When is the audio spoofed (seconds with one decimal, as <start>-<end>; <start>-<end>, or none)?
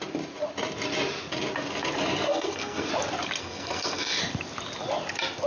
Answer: 2.3-2.9; 3.4-4.2